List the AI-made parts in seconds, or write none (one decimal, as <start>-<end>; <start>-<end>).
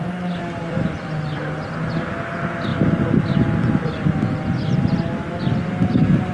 none